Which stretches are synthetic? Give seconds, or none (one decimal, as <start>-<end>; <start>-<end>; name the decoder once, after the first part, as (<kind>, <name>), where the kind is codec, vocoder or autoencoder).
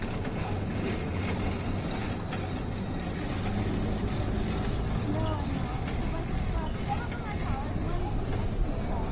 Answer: none